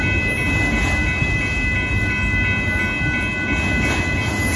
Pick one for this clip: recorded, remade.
recorded